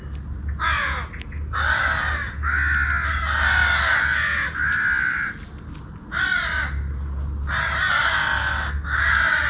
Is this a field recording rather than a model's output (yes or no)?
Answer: yes